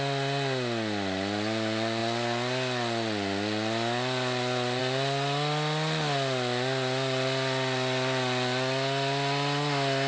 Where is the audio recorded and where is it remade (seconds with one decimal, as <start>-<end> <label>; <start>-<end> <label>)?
0.0-10.1 recorded